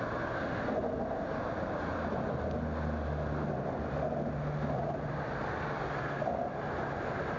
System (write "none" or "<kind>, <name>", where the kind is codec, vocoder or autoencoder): none